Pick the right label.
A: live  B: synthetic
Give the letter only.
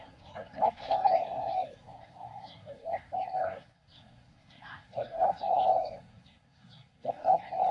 B